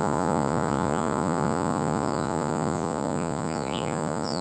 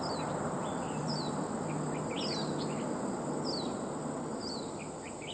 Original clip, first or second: second